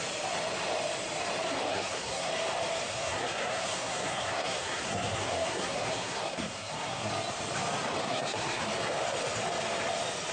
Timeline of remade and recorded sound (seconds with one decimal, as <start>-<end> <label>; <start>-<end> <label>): 0.0-1.7 recorded; 1.7-2.3 remade; 2.3-2.9 recorded; 2.9-7.1 remade; 7.1-8.0 recorded; 8.0-8.6 remade; 8.6-10.3 recorded